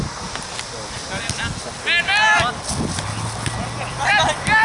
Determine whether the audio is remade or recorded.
recorded